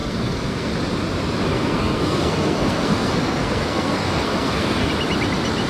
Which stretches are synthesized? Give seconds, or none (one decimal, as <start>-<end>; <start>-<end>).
0.0-0.7; 1.5-4.9